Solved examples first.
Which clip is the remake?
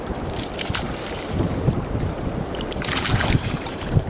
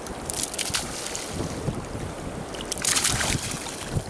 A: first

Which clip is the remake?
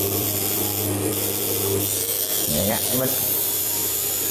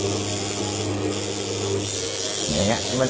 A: first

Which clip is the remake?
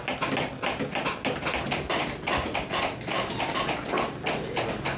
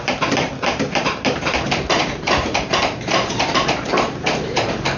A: second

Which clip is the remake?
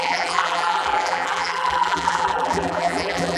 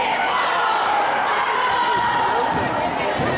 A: first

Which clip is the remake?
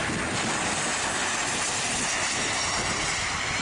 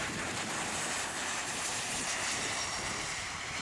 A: second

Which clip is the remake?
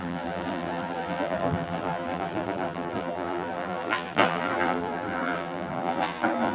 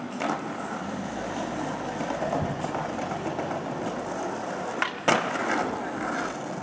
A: first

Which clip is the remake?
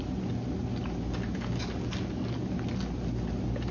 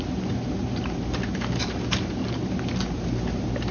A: second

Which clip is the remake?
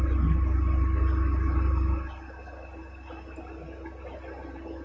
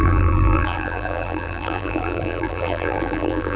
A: second